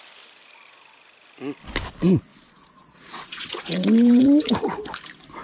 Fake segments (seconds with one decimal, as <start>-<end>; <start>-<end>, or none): 2.3-4.5